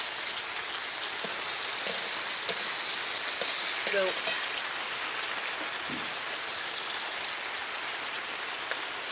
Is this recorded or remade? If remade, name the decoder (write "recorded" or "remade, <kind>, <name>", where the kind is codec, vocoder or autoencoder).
recorded